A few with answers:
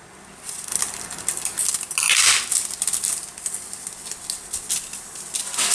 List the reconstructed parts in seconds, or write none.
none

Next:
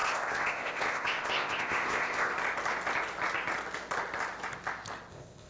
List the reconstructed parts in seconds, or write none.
0.0-2.3 (codec, ZipCodec); 5.1-5.5

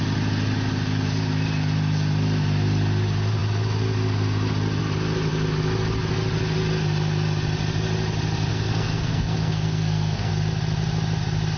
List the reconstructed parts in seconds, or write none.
8.5-10.3 (codec, SNAC)

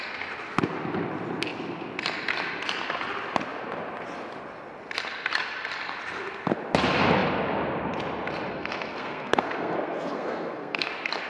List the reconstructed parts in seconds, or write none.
8.5-10.9 (codec, SNAC)

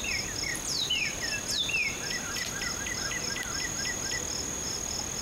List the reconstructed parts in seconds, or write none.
0.5-1.2 (vocoder, BigVGAN v2)

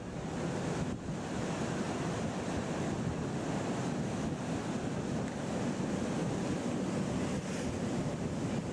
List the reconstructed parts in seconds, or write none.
none

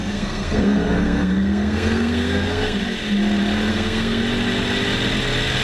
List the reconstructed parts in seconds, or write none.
0.0-2.8 (codec, SNAC); 3.7-4.2